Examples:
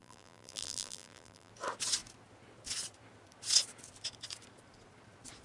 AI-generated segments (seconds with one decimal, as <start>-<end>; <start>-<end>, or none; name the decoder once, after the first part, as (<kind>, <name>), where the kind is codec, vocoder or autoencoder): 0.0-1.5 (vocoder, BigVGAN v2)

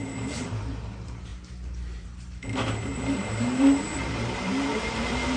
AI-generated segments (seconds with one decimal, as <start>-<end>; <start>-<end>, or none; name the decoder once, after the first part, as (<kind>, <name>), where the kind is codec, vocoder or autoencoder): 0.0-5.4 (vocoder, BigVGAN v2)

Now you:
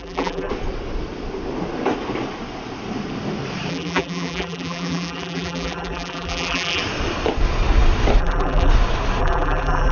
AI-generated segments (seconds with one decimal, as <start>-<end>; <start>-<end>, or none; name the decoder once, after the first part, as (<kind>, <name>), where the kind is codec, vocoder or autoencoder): 0.0-0.5 (vocoder, BigVGAN v2); 3.7-6.8; 8.2-8.7; 9.2-9.9

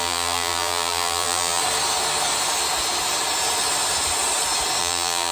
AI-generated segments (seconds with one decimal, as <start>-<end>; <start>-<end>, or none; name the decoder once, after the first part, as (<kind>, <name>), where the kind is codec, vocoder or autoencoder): 0.0-1.6 (vocoder, BigVGAN v2); 4.8-5.3